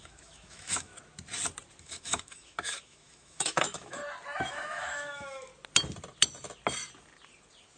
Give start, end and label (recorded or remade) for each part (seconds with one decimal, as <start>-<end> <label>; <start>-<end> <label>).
0.0-0.9 remade; 0.9-1.8 recorded; 1.8-4.0 remade; 4.0-4.5 recorded; 4.5-5.5 remade; 5.5-7.8 recorded